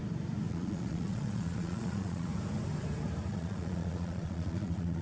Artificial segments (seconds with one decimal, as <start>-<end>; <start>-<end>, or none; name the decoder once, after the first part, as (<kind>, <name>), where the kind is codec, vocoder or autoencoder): 0.5-2.3 (vocoder, Vocos); 3.3-5.0

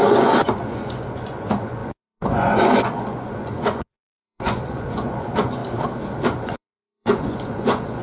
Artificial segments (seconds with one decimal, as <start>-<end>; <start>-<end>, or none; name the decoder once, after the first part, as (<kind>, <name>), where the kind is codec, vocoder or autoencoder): 0.0-5.6 (vocoder, Vocos); 6.4-8.0

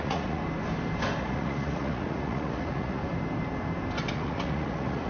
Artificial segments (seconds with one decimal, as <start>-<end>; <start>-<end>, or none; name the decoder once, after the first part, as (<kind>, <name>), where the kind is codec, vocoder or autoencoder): 0.0-0.4 (vocoder, Vocos); 1.2-3.0; 4.1-5.1

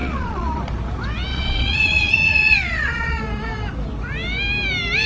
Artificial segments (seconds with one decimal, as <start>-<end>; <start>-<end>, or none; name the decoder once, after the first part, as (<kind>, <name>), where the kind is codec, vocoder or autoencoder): 0.0-0.6 (vocoder, Vocos); 1.3-3.2

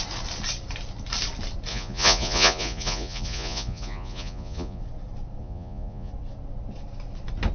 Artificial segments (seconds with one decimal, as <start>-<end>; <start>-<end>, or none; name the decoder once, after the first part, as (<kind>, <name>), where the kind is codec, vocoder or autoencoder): 1.7-4.8 (vocoder, Vocos); 5.4-6.1

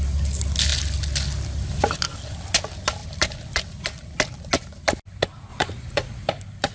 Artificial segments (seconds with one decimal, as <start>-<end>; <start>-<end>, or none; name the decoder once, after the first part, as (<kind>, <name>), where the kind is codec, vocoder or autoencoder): 5.5-6.3 (vocoder, Vocos)